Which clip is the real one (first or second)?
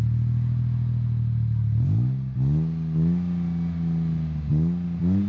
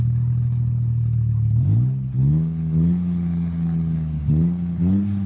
first